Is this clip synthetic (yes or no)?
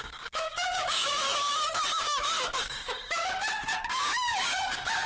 yes